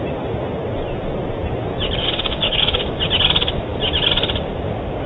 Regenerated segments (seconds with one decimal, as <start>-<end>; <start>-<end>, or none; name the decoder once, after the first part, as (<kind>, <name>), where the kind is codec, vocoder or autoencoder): 2.0-3.0 (codec, DAC)